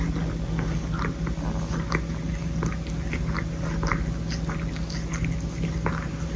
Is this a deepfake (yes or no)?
no